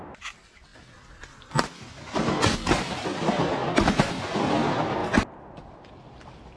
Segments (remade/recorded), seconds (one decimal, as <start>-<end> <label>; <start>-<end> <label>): 0.0-6.6 recorded